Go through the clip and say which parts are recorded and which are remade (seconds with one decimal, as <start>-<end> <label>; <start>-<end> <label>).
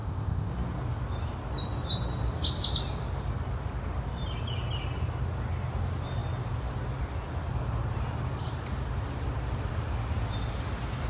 0.0-0.5 remade; 0.5-11.1 recorded